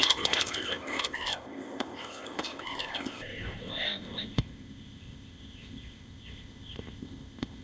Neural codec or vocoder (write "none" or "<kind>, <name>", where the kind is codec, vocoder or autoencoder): codec, ZipCodec